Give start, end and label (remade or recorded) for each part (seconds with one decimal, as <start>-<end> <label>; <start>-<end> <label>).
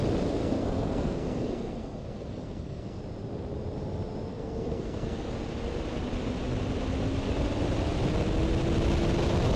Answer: 0.0-0.4 recorded; 0.4-3.0 remade; 3.0-4.3 recorded; 4.3-5.3 remade; 5.3-9.6 recorded